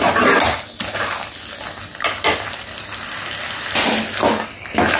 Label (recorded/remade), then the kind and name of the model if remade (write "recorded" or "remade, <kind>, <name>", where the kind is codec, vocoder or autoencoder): recorded